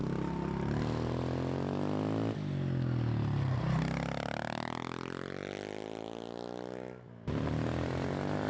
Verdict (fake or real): real